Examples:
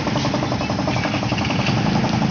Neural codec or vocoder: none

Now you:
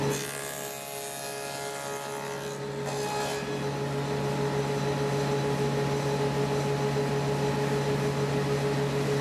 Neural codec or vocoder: none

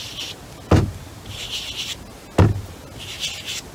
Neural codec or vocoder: none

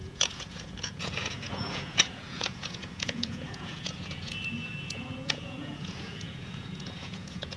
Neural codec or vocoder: vocoder, Vocos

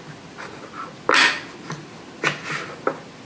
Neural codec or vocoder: none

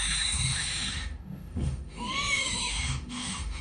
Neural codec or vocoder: autoencoder, DAC-VAE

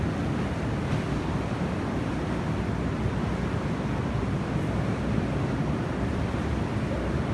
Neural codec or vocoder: vocoder, BigVGAN v2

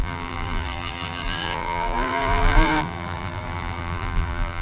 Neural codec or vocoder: vocoder, BigVGAN v2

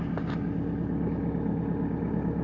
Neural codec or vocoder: none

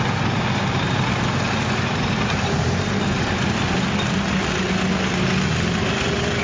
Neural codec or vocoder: none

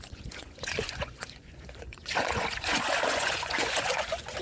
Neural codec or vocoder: vocoder, Vocos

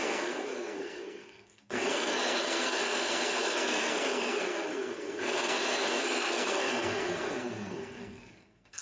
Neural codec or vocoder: codec, SNAC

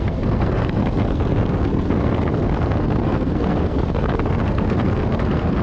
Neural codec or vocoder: codec, SNAC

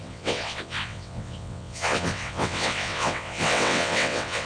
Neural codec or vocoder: vocoder, WaveNeXt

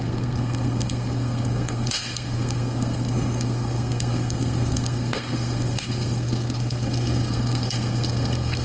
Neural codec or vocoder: codec, SNAC